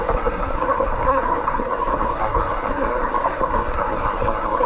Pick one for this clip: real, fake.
fake